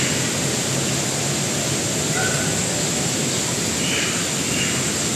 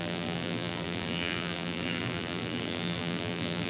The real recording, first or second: first